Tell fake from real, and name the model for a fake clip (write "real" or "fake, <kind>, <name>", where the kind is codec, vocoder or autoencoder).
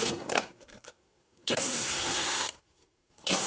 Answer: fake, codec, SNAC